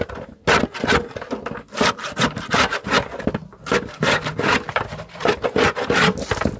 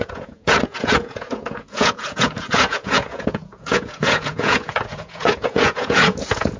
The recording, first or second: first